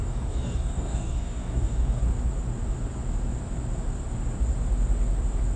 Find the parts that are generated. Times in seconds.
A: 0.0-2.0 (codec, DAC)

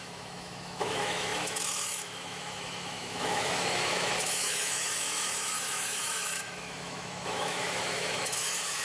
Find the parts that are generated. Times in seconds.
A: 0.0-8.8 (autoencoder, DAC-VAE)

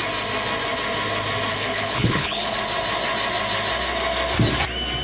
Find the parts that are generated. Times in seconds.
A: 1.5-2.6 (codec, HILCodec)